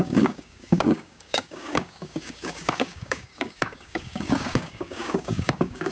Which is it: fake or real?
fake